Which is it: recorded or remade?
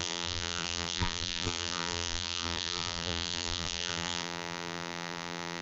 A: remade